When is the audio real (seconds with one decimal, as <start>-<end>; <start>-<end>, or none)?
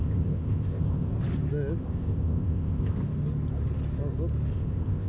1.1-1.8; 3.0-4.5